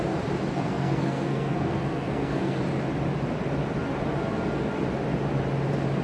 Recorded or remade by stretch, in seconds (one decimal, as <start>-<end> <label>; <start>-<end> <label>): 0.0-0.5 recorded; 0.5-2.6 remade; 2.6-6.0 recorded